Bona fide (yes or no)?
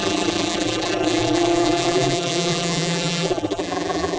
no